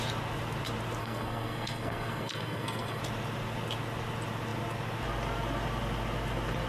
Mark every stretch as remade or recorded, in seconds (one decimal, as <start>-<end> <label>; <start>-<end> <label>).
0.0-1.0 recorded; 1.0-3.0 remade; 3.0-6.7 recorded